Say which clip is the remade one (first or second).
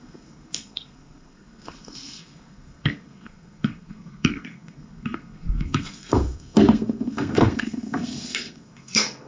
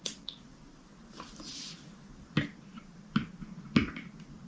first